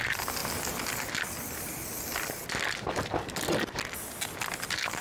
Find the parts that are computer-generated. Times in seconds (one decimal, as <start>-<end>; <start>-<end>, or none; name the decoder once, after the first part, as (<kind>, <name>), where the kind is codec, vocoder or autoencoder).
none